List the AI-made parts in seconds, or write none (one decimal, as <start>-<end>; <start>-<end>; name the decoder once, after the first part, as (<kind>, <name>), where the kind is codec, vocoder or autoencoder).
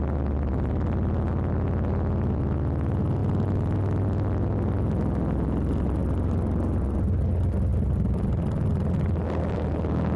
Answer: none